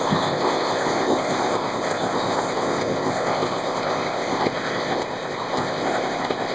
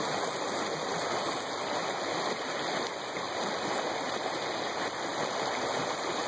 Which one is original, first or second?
second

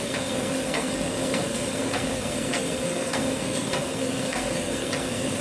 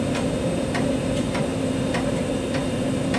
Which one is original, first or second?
second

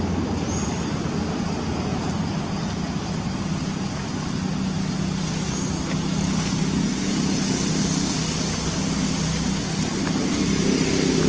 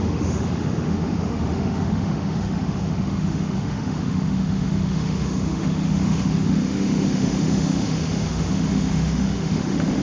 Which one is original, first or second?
first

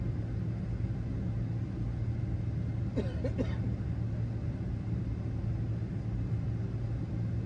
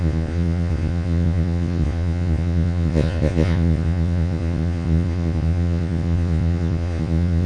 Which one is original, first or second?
first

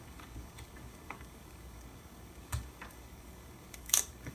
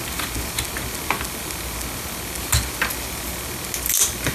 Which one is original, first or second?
second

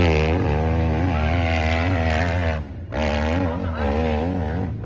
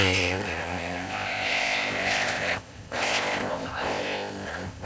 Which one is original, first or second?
first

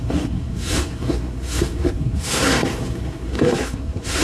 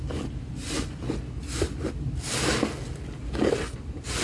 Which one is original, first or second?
second